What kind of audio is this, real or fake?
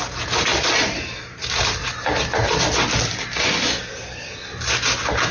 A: real